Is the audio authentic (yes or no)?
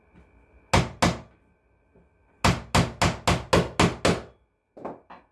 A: yes